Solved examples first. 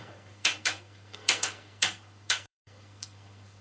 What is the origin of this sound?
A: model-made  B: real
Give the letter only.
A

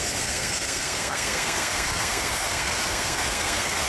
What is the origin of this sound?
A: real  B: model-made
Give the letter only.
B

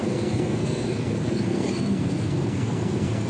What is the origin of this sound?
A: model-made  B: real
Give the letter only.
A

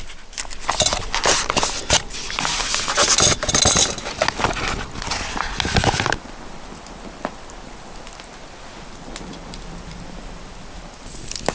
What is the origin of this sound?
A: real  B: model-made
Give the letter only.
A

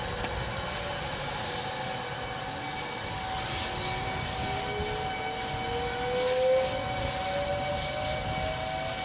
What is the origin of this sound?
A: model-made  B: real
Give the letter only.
B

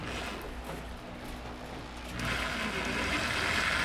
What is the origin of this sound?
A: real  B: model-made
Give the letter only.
A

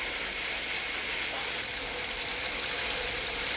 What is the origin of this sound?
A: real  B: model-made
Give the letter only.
A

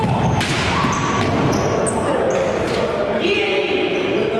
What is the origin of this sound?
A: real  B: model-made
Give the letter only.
A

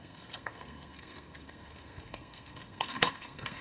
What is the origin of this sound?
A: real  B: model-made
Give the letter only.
B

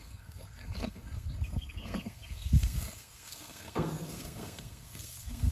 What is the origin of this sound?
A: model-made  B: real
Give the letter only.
A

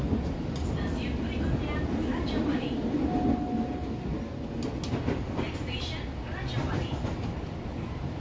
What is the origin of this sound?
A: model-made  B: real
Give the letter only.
B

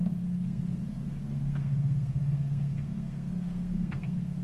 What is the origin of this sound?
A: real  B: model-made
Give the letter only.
B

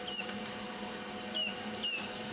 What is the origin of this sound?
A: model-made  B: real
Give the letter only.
B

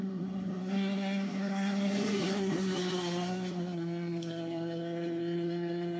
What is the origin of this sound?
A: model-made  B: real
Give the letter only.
A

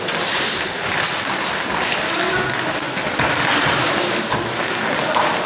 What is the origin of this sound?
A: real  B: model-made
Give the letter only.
A